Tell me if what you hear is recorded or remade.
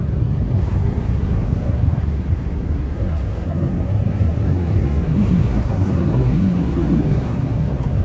remade